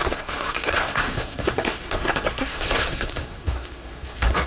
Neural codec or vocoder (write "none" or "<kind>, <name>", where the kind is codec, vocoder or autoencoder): codec, SNAC